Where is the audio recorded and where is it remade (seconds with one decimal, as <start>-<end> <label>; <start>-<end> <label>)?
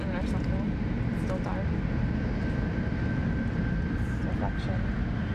0.0-5.3 recorded